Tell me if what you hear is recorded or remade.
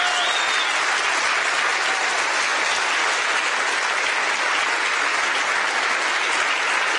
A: recorded